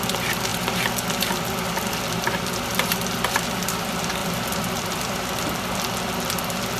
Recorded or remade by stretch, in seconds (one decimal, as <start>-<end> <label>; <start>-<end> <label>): 0.0-4.2 recorded; 4.2-5.2 remade; 5.2-6.8 recorded

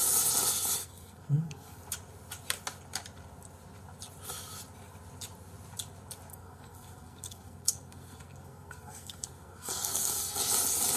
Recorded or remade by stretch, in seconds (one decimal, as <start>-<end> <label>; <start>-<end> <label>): 0.0-0.8 recorded; 0.8-1.8 remade; 1.8-6.3 recorded; 6.3-10.4 remade; 10.4-11.0 recorded